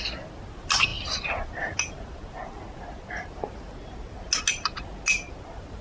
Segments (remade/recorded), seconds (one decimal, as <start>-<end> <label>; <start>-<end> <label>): 0.0-5.8 recorded